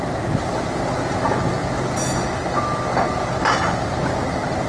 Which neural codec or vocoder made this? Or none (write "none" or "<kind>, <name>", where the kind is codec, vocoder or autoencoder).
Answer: none